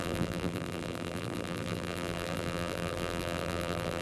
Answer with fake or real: fake